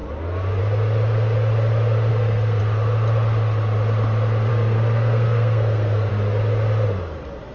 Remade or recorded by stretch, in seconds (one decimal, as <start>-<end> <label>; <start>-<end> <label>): 0.0-2.1 recorded; 2.1-2.6 remade; 2.6-4.5 recorded; 4.5-6.1 remade; 6.1-7.5 recorded